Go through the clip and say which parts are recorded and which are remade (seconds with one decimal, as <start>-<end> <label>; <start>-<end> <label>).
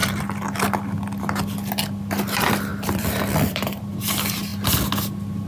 0.0-2.7 recorded; 2.7-3.8 remade; 3.8-5.5 recorded